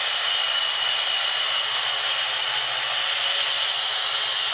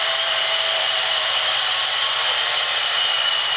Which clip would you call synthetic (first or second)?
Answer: second